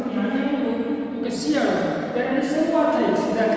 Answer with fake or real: real